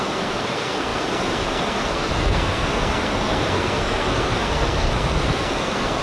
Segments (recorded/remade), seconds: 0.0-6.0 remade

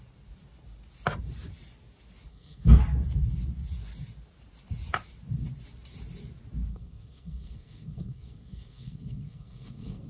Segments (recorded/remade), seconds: 0.0-2.3 recorded; 2.3-2.8 remade; 2.8-6.7 recorded; 6.7-10.1 remade

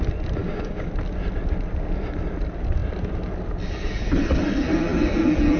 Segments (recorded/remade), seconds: 0.0-0.4 recorded; 0.4-0.9 remade; 0.9-5.6 recorded

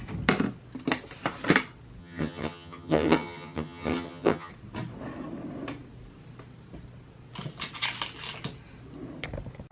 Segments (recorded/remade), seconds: 0.0-2.0 recorded; 2.0-4.5 remade; 4.5-9.7 recorded